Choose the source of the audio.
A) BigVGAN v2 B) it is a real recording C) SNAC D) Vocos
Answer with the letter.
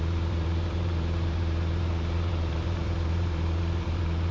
A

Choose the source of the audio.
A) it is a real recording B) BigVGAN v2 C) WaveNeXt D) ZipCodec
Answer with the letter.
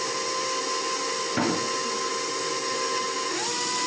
A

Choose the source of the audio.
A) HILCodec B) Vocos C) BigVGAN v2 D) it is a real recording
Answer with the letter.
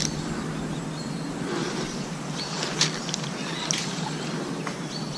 D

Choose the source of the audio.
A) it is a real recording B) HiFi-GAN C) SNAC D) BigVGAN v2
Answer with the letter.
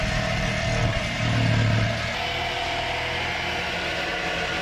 A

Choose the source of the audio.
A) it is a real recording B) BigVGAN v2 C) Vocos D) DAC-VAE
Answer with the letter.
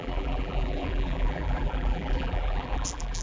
B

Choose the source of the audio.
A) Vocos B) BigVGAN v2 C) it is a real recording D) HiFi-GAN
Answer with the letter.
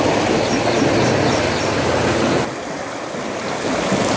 C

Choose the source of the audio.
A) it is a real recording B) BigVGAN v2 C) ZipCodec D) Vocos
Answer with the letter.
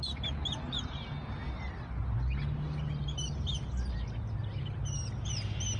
A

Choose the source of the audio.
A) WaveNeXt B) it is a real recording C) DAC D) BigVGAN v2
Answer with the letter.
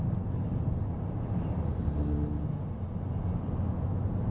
B